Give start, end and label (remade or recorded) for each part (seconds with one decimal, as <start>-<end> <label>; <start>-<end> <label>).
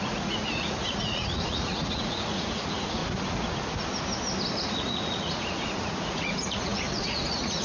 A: 0.0-3.0 remade; 3.0-4.6 recorded; 4.6-7.6 remade